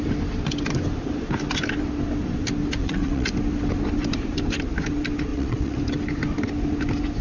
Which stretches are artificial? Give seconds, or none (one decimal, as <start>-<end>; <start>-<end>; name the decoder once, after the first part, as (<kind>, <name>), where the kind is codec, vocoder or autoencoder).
2.8-3.3 (vocoder, WaveNeXt); 5.3-5.8